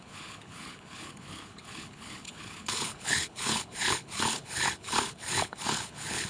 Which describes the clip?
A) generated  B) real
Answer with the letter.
A